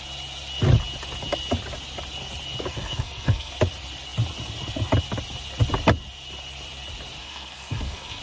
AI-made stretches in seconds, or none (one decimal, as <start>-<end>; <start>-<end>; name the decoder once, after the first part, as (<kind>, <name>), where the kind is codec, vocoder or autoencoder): 2.7-3.5 (codec, SNAC); 7.2-8.2